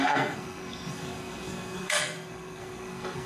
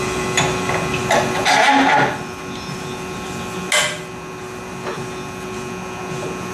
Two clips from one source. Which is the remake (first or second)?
first